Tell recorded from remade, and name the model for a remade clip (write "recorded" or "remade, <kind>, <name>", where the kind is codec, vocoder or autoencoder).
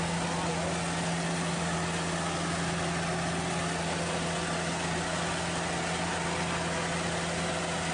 recorded